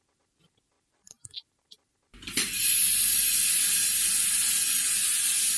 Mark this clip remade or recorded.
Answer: recorded